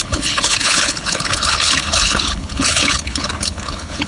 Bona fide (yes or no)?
no